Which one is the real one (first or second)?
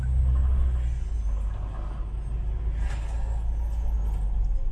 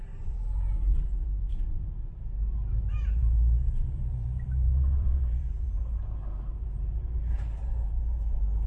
first